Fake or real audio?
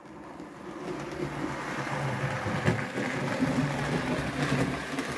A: real